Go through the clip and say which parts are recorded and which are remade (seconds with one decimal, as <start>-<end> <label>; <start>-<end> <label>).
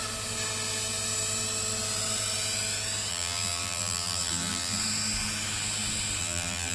0.0-3.1 recorded; 3.1-4.8 remade; 4.8-6.2 recorded; 6.2-6.7 remade